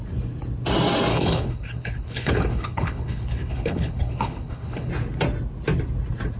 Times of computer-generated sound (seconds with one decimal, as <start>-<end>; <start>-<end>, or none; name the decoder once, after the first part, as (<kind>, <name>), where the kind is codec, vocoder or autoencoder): 1.1-4.9 (codec, HILCodec)